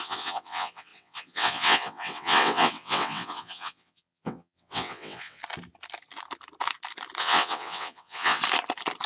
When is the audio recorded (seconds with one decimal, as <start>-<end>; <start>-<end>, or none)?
5.4-7.2; 8.4-9.1